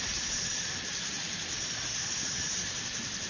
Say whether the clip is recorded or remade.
recorded